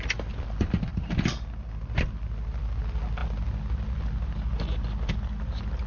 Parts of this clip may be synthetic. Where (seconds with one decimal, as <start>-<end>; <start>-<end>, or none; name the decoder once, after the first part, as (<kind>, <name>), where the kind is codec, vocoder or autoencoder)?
none

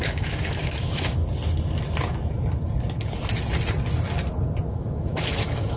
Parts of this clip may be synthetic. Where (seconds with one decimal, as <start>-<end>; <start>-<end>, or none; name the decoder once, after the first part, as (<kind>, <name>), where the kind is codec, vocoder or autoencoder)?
0.0-1.2 (autoencoder, DAC-VAE); 4.7-5.8

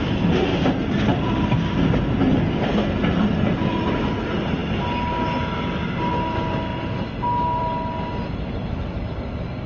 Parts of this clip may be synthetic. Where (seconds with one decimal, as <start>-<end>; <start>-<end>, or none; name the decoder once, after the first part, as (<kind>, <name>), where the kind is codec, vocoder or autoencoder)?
none